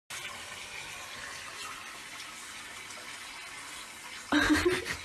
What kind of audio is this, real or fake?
real